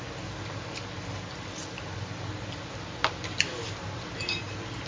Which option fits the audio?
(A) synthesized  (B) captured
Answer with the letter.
B